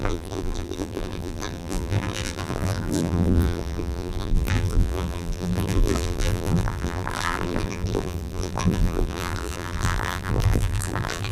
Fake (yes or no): yes